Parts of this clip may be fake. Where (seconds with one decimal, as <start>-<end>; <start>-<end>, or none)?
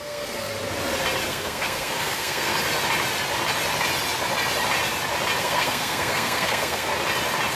0.0-0.5; 1.3-2.5; 5.4-6.9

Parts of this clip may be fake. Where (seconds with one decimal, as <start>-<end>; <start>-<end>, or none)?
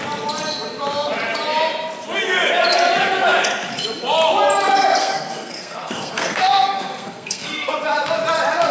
5.0-7.7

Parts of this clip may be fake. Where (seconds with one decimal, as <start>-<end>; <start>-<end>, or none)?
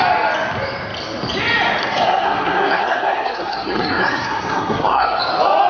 1.8-5.2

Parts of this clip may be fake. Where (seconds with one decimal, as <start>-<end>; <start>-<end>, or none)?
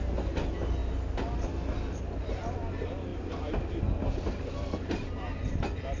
none